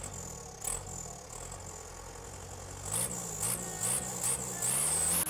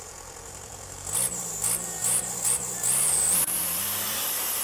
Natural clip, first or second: first